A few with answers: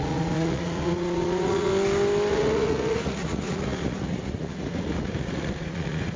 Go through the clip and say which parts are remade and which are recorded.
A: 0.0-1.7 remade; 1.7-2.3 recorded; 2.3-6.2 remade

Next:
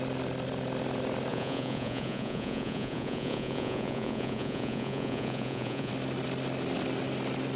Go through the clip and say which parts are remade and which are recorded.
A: 0.0-1.3 recorded; 1.3-5.9 remade; 5.9-7.6 recorded

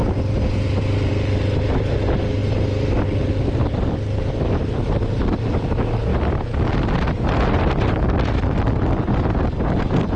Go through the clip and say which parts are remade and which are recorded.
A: 0.0-10.2 recorded

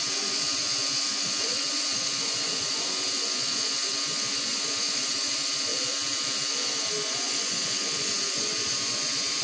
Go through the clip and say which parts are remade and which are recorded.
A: 0.0-5.7 remade; 5.7-6.9 recorded; 6.9-9.4 remade

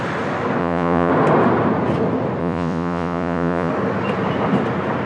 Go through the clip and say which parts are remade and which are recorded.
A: 0.0-0.6 recorded; 0.6-1.1 remade; 1.1-2.4 recorded; 2.4-3.7 remade; 3.7-5.1 recorded

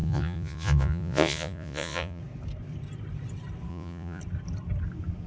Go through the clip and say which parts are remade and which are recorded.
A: 0.0-2.2 remade; 2.2-3.7 recorded; 3.7-4.2 remade; 4.2-5.3 recorded